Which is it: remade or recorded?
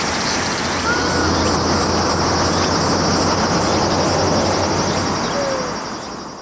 recorded